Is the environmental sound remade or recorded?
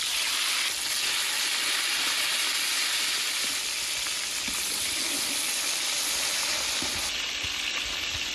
recorded